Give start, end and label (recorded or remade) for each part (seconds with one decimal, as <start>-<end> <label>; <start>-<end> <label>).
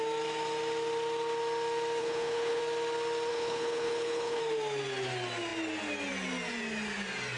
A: 0.0-2.0 recorded; 2.0-2.6 remade; 2.6-3.3 recorded; 3.3-4.4 remade; 4.4-7.4 recorded